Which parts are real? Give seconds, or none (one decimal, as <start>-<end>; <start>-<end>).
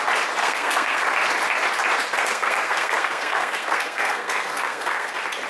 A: 0.0-0.4; 1.0-2.1; 5.1-5.5